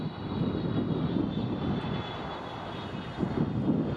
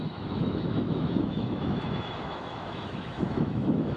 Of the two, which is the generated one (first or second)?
second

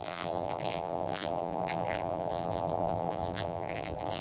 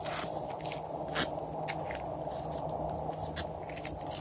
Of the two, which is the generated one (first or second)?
first